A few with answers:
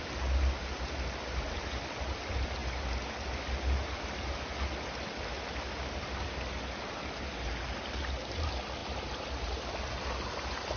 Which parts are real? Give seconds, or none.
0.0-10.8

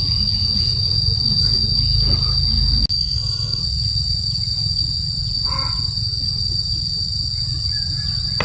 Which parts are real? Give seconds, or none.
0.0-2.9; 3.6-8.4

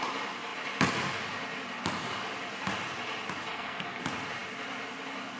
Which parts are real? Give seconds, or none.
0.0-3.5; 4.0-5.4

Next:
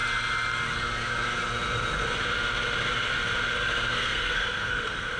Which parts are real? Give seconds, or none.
0.0-3.6

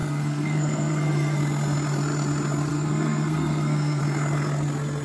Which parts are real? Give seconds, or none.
1.4-2.7; 4.0-5.0

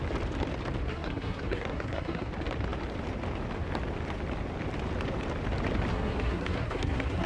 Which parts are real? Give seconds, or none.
0.0-0.9; 2.3-5.9